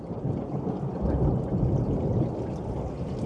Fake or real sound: real